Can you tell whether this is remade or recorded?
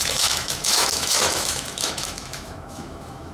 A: remade